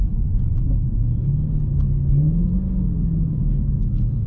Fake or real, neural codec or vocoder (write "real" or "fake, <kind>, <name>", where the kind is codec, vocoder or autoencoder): real